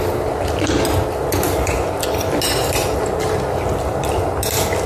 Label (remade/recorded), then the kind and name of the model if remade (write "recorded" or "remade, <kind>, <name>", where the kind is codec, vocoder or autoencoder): recorded